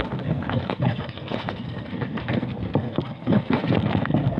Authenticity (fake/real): fake